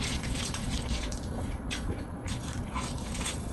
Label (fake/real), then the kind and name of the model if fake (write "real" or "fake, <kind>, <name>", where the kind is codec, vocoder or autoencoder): fake, vocoder, Vocos